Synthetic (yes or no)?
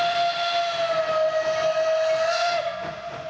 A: no